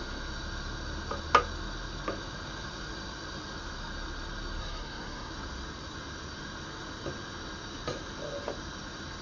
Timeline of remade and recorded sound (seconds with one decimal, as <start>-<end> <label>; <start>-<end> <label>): 0.0-4.6 recorded; 4.6-5.3 remade; 5.3-9.2 recorded